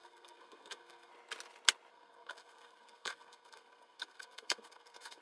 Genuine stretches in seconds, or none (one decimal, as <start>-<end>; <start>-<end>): 1.1-1.9